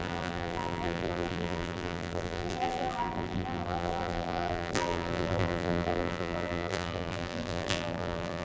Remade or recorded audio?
remade